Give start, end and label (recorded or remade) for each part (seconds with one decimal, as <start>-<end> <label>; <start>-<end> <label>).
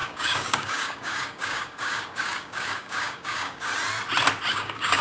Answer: 0.0-3.7 remade; 3.7-4.5 recorded; 4.5-5.0 remade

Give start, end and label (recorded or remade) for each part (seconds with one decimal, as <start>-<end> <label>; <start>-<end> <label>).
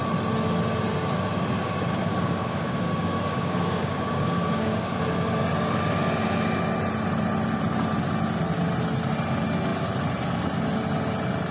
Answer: 0.0-2.0 recorded; 2.0-5.0 remade; 5.0-11.5 recorded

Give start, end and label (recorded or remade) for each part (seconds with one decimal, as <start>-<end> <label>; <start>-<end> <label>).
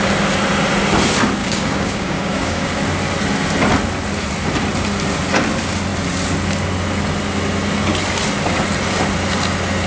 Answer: 0.0-1.4 recorded; 1.4-2.8 remade; 2.8-9.9 recorded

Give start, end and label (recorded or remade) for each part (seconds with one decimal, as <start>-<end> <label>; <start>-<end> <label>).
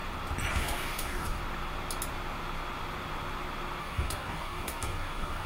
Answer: 0.0-0.5 recorded; 0.5-1.4 remade; 1.4-3.8 recorded; 3.8-5.5 remade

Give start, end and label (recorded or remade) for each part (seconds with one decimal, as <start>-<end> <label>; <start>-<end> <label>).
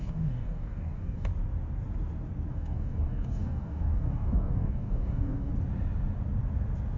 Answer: 0.0-1.3 remade; 1.3-2.5 recorded; 2.5-5.5 remade; 5.5-7.0 recorded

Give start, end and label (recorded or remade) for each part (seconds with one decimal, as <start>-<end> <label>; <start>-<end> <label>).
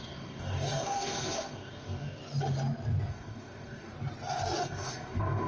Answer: 0.0-2.2 remade; 2.2-3.1 recorded; 3.1-3.9 remade; 3.9-4.6 recorded; 4.6-5.5 remade